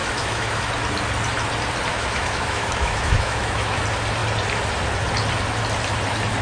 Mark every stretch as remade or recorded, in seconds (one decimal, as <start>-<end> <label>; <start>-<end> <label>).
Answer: 0.0-0.7 remade; 0.7-1.9 recorded; 1.9-3.8 remade; 3.8-6.4 recorded